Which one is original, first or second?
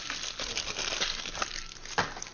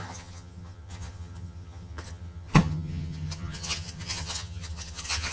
first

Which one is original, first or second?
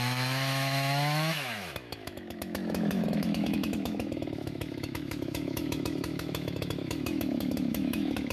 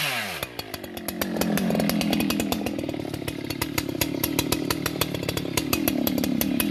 second